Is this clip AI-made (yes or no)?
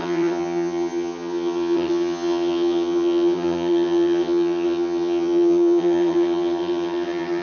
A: yes